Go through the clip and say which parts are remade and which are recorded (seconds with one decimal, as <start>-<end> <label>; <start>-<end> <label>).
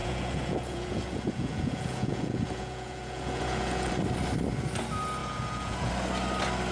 0.0-3.9 remade; 3.9-5.2 recorded; 5.2-5.9 remade; 5.9-6.7 recorded